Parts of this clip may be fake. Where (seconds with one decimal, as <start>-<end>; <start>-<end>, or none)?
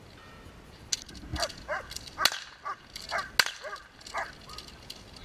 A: none